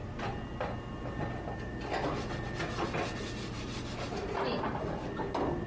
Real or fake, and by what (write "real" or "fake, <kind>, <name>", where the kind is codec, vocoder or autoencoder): real